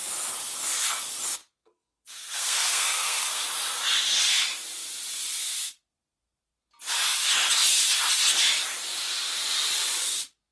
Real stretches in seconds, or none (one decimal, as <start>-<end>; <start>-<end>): 0.0-1.4; 3.4-10.5